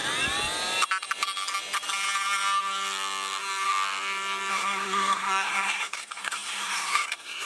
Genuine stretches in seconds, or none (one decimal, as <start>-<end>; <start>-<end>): 0.0-4.5